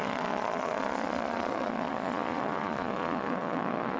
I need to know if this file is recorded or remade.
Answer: remade